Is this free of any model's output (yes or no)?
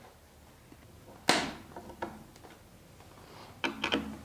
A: yes